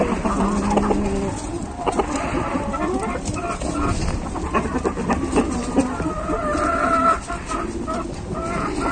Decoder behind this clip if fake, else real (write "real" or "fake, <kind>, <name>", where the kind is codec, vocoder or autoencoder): real